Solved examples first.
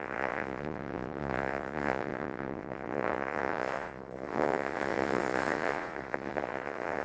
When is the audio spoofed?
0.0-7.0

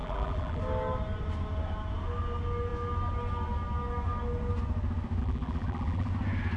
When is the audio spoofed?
0.0-0.6; 5.2-6.1

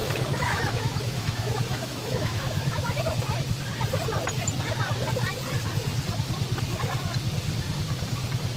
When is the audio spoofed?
0.0-3.0